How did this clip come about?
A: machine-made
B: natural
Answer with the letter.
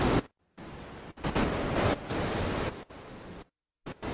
B